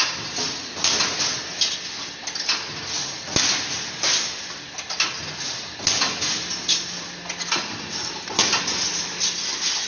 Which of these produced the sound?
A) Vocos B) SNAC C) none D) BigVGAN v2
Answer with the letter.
C